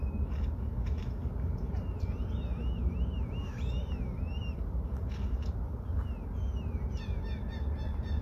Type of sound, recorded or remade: recorded